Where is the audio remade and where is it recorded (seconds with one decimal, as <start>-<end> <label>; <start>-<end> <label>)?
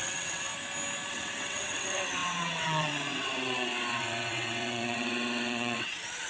0.0-0.5 remade; 0.5-1.1 recorded; 1.1-6.3 remade